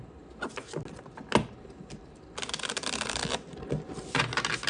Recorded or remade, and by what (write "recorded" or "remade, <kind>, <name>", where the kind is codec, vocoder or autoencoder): recorded